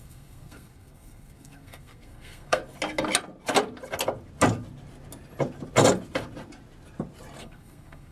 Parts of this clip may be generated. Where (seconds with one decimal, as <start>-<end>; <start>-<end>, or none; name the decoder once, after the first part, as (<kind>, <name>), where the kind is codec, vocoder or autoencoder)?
0.0-2.6 (codec, SNAC); 7.4-8.1